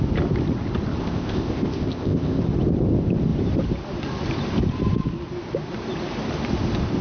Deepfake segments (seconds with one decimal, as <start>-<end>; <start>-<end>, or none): 1.0-2.4